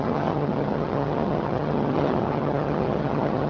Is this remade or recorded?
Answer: remade